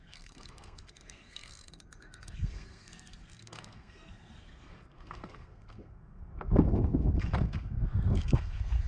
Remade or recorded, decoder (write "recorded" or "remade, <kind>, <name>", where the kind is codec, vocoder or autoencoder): remade, codec, SNAC